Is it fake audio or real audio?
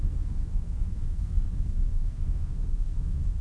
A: fake